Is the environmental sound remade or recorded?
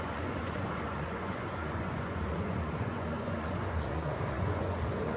remade